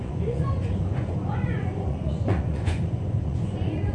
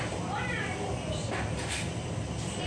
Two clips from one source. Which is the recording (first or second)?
second